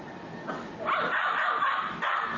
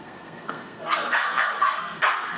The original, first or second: first